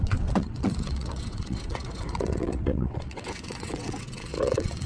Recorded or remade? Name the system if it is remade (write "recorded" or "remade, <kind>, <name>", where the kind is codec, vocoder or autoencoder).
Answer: remade, vocoder, WaveNeXt